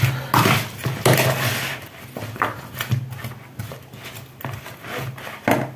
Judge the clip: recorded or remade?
recorded